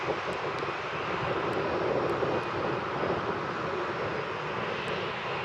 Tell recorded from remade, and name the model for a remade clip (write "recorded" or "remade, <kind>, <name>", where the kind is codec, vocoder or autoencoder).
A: recorded